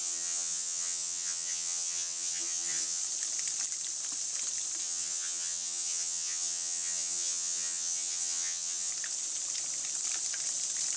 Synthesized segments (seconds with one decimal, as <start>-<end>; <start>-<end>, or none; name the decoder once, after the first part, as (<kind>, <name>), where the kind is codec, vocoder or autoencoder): 0.0-3.0 (vocoder, HiFi-GAN); 4.8-8.9